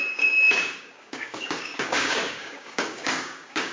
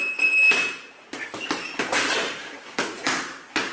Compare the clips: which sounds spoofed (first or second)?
first